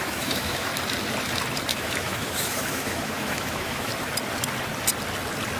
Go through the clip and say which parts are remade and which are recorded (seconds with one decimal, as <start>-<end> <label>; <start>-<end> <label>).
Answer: 0.0-0.7 remade; 0.7-1.7 recorded; 1.7-3.9 remade; 3.9-5.6 recorded